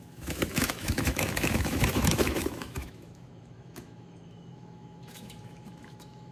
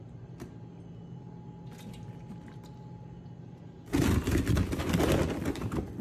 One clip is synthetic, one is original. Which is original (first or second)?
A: second